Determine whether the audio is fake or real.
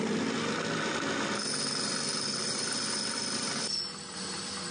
real